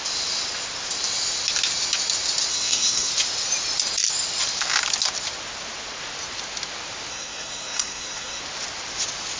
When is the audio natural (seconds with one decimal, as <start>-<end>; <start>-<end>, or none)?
0.0-2.5; 3.1-7.1; 8.4-9.4